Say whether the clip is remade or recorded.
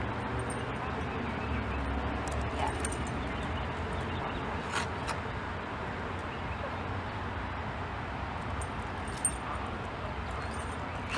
recorded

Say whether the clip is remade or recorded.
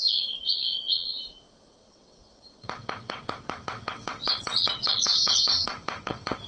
remade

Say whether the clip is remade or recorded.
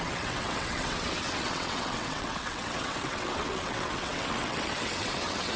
remade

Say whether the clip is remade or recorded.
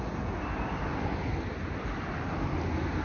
recorded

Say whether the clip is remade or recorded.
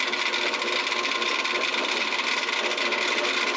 recorded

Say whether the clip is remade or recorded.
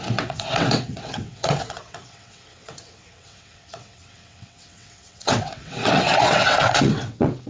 remade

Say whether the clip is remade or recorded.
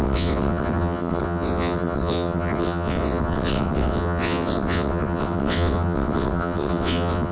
remade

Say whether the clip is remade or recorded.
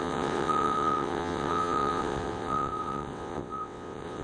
remade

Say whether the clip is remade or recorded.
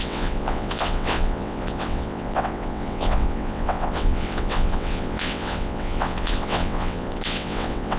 remade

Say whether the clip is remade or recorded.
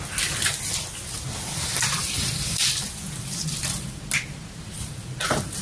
recorded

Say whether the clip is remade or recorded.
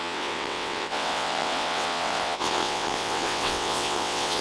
remade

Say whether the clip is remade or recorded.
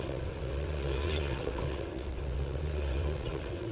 remade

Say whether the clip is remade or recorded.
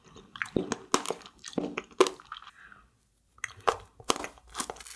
recorded